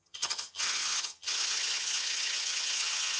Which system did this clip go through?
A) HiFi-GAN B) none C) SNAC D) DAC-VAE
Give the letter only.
A